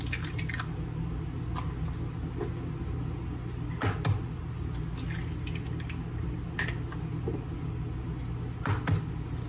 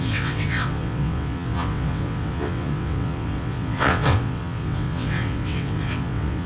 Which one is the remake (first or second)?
second